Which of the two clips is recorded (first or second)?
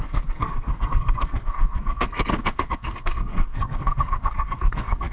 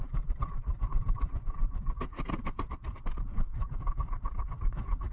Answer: second